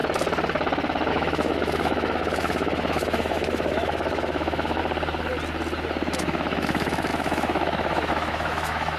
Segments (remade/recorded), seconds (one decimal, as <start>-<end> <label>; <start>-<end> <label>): 0.0-1.1 recorded; 1.1-4.8 remade; 4.8-6.2 recorded; 6.2-9.0 remade